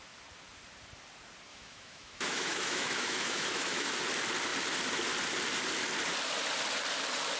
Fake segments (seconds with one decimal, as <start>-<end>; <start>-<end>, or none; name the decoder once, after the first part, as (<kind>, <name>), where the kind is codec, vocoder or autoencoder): 1.5-3.9 (autoencoder, DAC-VAE)

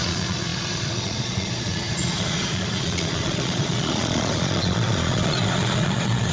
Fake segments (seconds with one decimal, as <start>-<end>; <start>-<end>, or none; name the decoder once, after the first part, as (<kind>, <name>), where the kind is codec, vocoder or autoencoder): 0.0-6.3 (vocoder, Vocos)

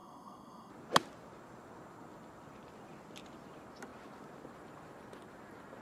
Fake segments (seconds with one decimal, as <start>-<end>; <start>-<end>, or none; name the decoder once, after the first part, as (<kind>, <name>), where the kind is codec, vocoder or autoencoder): 0.0-0.7 (codec, SNAC)

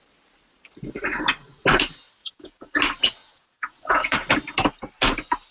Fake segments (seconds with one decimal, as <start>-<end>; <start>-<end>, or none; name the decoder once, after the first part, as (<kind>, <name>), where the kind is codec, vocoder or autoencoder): 2.2-2.8 (vocoder, Vocos); 3.2-4.1

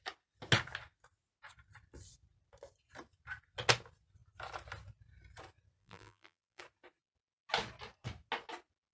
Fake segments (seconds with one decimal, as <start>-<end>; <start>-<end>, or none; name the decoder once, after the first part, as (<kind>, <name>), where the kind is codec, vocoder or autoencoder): 5.8-6.6 (vocoder, BigVGAN v2)

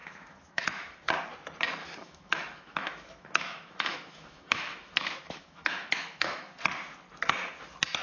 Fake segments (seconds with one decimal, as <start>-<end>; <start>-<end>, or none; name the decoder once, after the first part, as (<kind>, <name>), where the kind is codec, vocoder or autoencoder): 0.0-1.0 (autoencoder, DAC-VAE); 1.8-6.6

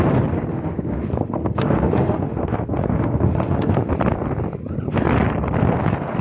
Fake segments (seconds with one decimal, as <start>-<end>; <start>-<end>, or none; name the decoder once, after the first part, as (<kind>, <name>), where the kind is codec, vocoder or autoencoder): 0.5-3.9 (autoencoder, DAC-VAE)